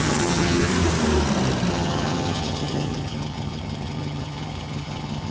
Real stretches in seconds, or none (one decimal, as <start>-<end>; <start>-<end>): 0.7-1.7